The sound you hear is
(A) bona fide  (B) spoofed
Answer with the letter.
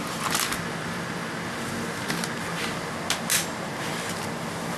A